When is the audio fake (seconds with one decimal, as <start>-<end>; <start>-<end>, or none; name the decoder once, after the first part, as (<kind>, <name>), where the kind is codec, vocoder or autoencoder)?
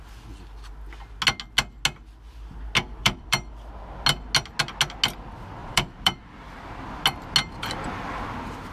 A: 3.0-3.7 (vocoder, BigVGAN v2); 5.6-6.6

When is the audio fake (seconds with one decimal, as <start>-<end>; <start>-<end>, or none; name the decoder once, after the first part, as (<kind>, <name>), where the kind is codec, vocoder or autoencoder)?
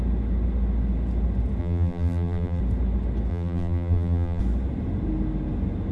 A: 1.6-2.6 (vocoder, BigVGAN v2); 3.3-4.4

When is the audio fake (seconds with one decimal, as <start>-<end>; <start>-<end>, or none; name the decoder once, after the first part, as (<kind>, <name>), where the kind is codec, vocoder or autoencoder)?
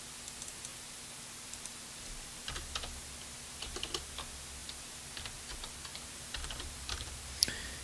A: 0.7-1.7 (vocoder, BigVGAN v2); 5.9-7.8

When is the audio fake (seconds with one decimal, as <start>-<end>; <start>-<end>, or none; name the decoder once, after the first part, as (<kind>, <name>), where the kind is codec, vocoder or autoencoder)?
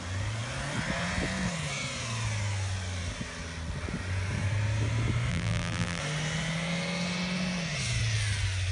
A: 5.3-6.0 (vocoder, BigVGAN v2)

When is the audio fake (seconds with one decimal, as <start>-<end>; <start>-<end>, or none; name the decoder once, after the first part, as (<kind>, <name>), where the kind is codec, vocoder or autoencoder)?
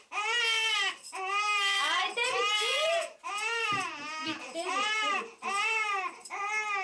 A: 4.2-4.7 (vocoder, BigVGAN v2)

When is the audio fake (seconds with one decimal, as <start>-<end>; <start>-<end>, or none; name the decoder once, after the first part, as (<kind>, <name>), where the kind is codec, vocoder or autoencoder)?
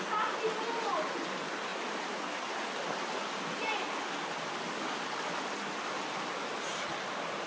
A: 6.7-7.5 (vocoder, BigVGAN v2)